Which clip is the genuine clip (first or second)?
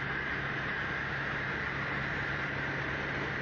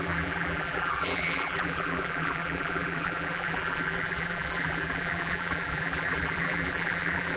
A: first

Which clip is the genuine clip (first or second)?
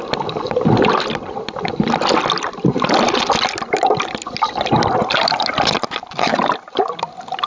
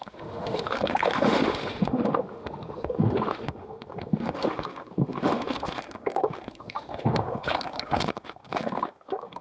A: first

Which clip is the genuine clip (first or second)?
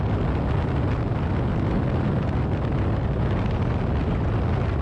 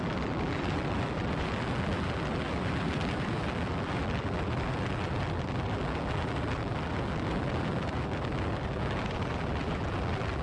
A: first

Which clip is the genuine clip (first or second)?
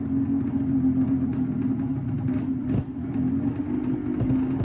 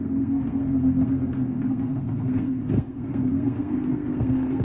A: first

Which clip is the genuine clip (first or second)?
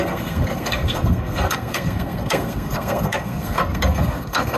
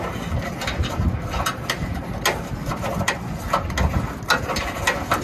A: second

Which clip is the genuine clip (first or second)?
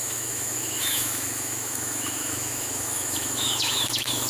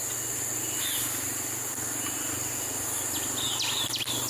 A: second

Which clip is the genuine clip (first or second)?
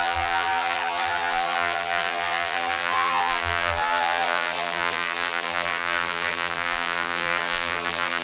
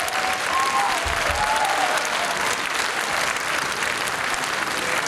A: second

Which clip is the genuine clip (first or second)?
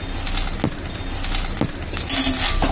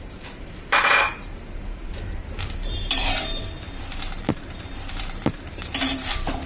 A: first